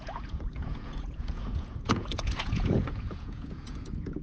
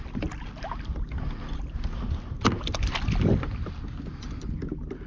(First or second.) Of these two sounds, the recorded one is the second